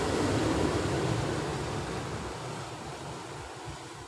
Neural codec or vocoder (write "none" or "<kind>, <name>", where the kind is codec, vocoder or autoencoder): none